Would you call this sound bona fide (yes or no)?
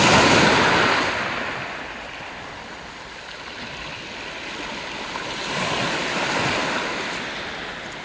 yes